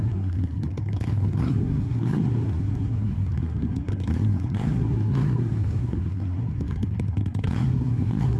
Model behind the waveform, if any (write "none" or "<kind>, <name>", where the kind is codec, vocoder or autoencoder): codec, SNAC